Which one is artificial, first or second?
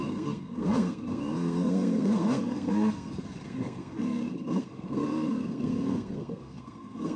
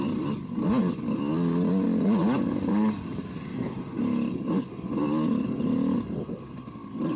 first